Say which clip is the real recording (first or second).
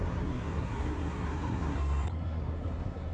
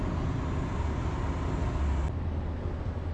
second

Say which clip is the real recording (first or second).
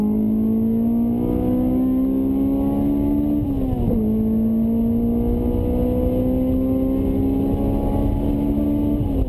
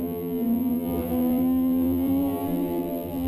first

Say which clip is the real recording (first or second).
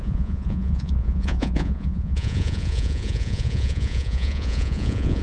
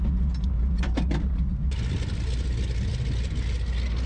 second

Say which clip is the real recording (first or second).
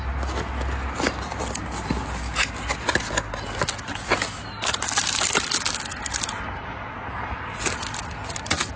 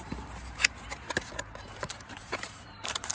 first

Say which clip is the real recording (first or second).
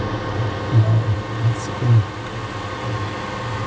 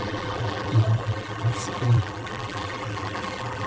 first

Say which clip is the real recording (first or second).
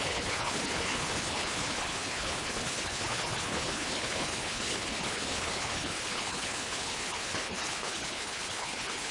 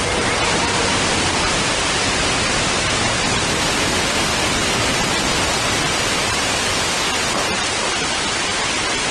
second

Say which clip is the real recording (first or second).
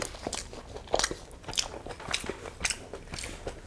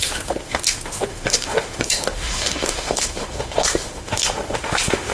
first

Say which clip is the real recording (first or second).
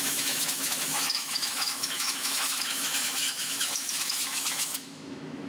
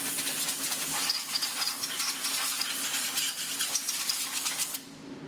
second